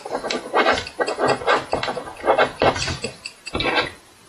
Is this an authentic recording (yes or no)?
yes